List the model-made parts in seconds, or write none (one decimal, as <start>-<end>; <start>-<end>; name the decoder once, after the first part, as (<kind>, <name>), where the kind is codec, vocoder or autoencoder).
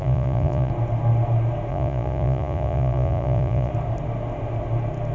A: 0.0-0.7 (vocoder, Vocos); 1.7-3.7